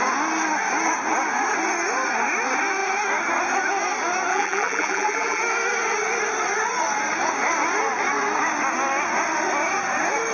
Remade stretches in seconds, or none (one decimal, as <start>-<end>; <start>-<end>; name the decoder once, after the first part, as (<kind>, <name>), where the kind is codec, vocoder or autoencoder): 4.3-5.4 (vocoder, BigVGAN v2)